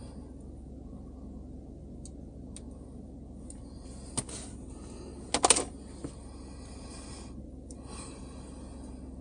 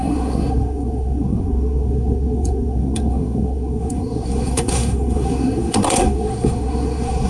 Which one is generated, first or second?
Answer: second